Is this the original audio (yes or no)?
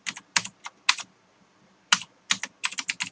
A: yes